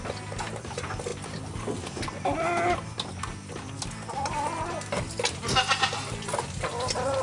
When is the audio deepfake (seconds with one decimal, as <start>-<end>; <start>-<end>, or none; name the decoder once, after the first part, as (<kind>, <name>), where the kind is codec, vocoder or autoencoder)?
none